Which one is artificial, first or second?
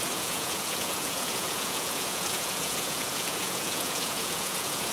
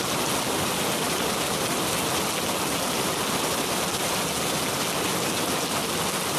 first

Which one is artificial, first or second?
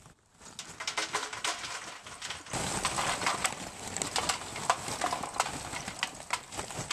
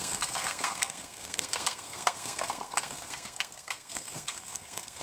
second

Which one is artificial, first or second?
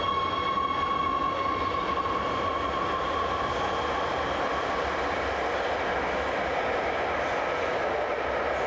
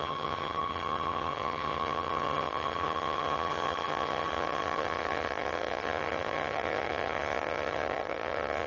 second